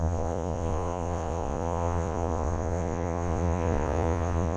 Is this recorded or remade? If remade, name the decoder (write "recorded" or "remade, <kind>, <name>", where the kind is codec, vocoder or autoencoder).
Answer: remade, vocoder, Vocos